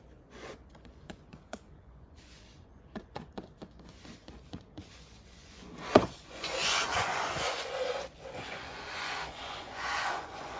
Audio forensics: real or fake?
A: fake